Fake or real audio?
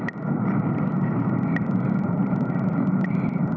fake